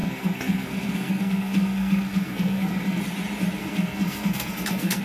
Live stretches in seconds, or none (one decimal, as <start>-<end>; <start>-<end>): 3.0-3.6